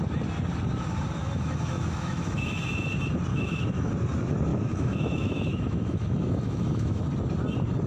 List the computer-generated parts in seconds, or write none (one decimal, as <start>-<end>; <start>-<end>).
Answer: 1.2-2.6; 3.3-3.9; 4.5-7.0